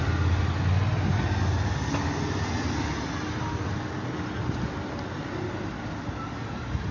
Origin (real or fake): real